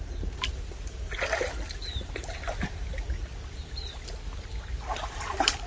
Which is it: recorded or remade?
recorded